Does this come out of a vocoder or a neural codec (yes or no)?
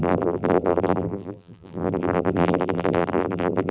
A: yes